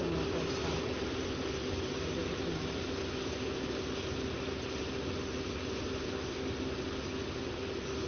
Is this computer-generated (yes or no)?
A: no